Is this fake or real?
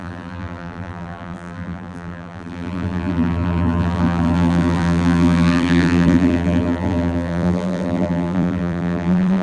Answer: fake